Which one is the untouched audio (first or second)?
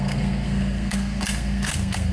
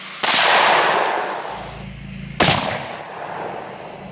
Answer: second